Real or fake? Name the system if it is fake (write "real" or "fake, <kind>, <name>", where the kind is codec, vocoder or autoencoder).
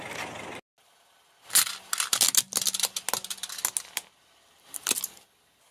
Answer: real